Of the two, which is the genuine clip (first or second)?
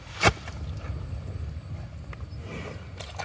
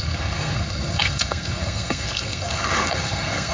first